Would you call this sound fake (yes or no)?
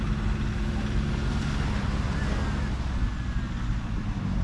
no